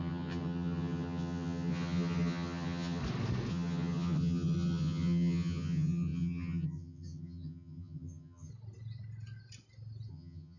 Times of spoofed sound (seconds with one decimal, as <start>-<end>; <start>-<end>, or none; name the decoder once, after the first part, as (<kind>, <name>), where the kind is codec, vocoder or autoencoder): 0.0-3.0 (vocoder, HiFi-GAN); 3.5-8.5; 10.1-10.6